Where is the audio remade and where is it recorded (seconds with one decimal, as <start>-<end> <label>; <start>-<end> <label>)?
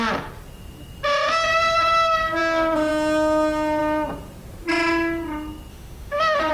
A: 0.0-5.7 recorded; 5.7-6.5 remade